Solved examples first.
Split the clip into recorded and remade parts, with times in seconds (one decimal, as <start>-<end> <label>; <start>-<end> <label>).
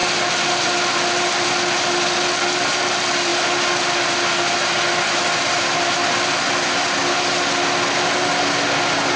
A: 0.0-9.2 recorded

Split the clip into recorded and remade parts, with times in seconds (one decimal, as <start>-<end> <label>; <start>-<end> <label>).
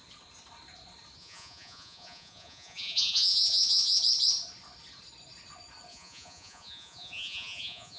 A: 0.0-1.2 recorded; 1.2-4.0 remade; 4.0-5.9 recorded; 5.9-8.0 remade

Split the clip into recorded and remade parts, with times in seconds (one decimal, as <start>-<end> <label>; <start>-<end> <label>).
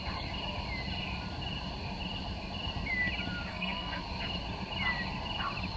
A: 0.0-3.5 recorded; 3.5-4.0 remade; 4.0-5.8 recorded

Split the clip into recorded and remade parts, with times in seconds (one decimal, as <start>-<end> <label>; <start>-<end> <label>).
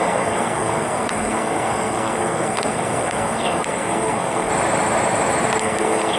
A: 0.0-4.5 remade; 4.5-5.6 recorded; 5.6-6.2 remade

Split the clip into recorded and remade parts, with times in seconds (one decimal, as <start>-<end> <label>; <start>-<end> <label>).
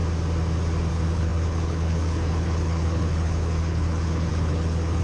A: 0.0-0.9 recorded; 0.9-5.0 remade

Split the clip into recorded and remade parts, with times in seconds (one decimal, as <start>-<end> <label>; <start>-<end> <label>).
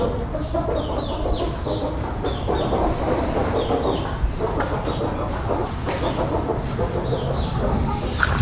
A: 0.0-5.6 recorded; 5.6-8.0 remade; 8.0-8.4 recorded